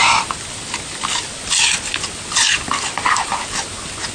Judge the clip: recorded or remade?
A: recorded